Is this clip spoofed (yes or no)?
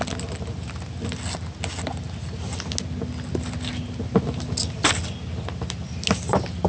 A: no